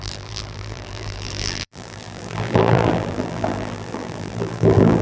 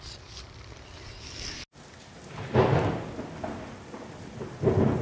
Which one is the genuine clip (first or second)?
second